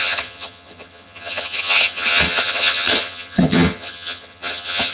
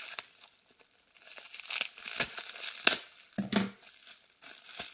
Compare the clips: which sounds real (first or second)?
second